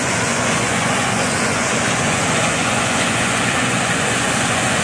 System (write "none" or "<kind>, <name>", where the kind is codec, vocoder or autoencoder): vocoder, Vocos